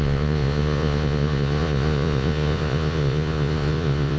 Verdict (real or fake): fake